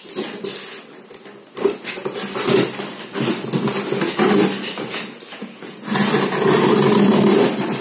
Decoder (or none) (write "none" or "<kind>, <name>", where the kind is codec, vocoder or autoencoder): none